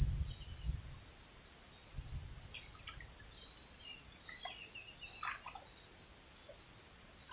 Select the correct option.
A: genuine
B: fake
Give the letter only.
A